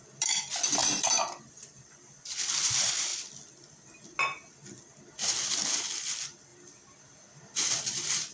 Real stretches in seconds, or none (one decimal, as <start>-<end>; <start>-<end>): 3.1-5.9